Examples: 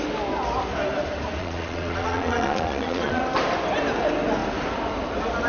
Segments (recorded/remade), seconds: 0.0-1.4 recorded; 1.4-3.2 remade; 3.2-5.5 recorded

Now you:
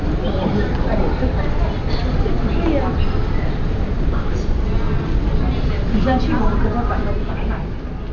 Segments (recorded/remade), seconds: 0.0-8.1 recorded

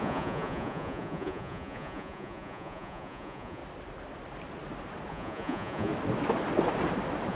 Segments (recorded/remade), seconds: 0.0-3.6 remade; 3.6-5.1 recorded; 5.1-5.9 remade; 5.9-7.3 recorded

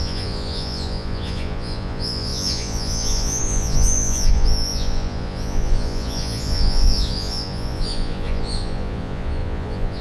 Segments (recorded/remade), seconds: 0.0-10.0 remade